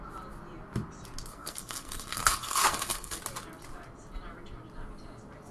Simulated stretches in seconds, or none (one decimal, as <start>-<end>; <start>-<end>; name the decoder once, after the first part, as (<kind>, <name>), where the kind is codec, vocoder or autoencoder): 1.3-3.2 (codec, SNAC)